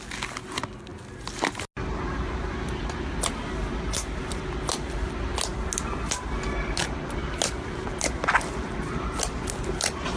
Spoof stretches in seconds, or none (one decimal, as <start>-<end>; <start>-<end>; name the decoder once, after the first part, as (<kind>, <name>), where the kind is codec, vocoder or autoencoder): none